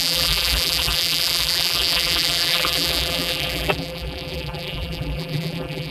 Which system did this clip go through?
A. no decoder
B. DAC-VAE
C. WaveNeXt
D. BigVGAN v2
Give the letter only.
D